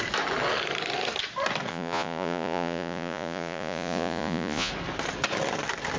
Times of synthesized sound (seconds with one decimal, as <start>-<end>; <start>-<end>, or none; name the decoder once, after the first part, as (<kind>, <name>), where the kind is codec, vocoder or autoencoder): 1.7-4.7 (vocoder, Vocos)